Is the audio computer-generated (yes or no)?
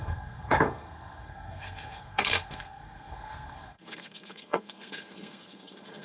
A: yes